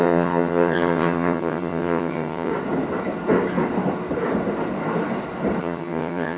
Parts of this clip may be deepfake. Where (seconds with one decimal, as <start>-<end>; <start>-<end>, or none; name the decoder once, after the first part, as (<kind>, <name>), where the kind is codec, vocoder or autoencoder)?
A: 0.0-2.5 (vocoder, HiFi-GAN); 5.6-6.4